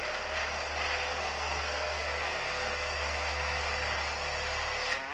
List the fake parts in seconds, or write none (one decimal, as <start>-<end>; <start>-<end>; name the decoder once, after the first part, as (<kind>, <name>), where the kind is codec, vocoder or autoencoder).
1.1-3.6 (codec, SNAC)